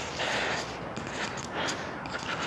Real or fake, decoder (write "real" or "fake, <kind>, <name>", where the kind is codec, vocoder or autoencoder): real